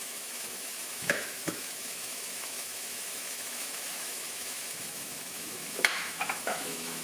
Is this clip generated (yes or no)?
yes